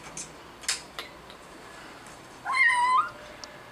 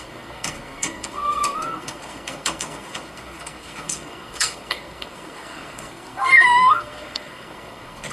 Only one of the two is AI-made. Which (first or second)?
second